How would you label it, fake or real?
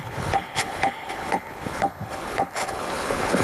fake